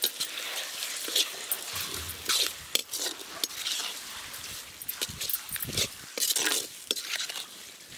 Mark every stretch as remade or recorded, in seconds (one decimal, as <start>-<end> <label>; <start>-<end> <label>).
0.0-8.0 recorded